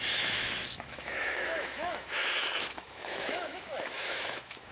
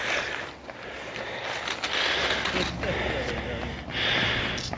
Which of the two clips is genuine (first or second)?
second